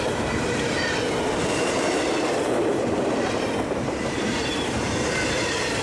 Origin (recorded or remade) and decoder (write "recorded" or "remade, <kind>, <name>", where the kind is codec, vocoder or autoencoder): remade, vocoder, BigVGAN v2